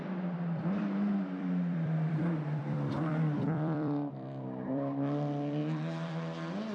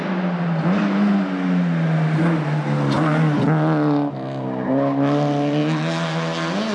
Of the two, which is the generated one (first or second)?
first